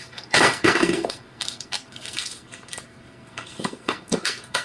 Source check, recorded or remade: remade